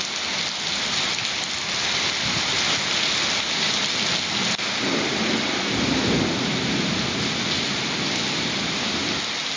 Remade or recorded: recorded